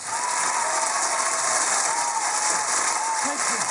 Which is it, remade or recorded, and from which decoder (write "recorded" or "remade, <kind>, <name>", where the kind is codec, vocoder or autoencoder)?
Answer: recorded